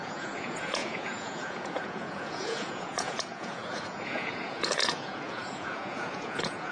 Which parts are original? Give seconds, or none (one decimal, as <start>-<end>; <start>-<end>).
none